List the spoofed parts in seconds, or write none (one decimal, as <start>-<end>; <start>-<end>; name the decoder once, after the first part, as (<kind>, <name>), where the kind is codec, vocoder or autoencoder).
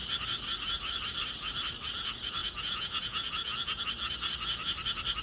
2.4-3.8 (vocoder, Vocos)